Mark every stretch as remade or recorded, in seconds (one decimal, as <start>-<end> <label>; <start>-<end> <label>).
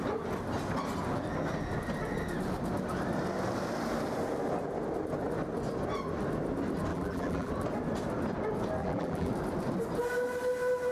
0.0-6.9 recorded; 6.9-7.5 remade; 7.5-8.8 recorded; 8.8-9.3 remade; 9.3-10.9 recorded